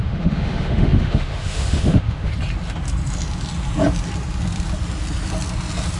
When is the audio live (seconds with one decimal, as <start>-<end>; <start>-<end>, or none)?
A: 2.3-6.0